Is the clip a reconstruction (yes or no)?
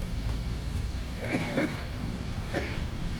yes